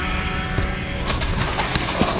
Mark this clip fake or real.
real